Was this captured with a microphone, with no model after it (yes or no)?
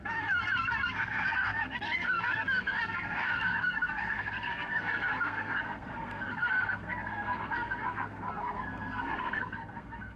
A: no